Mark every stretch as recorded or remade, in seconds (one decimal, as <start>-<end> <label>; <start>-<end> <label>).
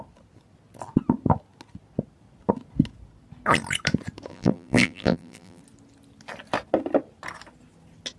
0.0-4.3 recorded; 4.3-5.6 remade; 5.6-8.2 recorded